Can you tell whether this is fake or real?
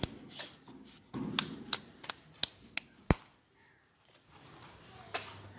real